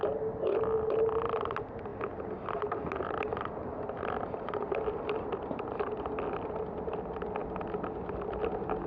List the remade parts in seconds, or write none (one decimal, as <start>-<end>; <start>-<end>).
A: none